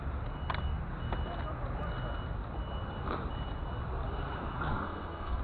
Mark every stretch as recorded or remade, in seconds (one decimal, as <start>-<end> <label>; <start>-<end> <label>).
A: 0.0-4.7 recorded; 4.7-5.4 remade